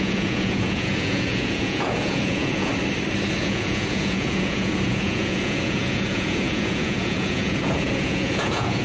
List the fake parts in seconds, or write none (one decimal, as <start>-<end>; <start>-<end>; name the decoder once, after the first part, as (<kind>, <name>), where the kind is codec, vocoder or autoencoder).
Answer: 0.0-2.7 (vocoder, Vocos); 3.4-8.8